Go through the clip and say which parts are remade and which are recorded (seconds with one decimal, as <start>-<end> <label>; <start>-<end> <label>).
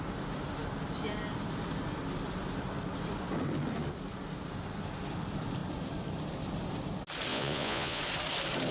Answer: 0.0-7.3 recorded; 7.3-8.0 remade; 8.0-8.7 recorded